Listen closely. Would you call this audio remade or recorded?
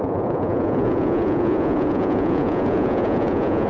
remade